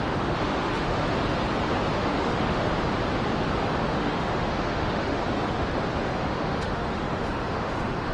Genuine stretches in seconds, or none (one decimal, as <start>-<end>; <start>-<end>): 1.1-1.9; 2.7-3.9; 5.2-6.0